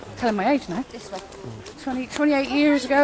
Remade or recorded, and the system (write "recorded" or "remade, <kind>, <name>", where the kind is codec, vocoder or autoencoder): recorded